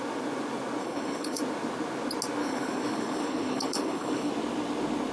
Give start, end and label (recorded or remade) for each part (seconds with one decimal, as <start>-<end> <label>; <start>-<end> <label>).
0.0-0.8 recorded; 0.8-1.4 remade; 1.4-2.4 recorded; 2.4-4.3 remade; 4.3-5.1 recorded